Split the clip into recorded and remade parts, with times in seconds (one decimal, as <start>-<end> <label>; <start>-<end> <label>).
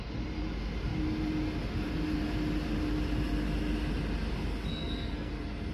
0.0-4.7 recorded; 4.7-5.3 remade; 5.3-5.7 recorded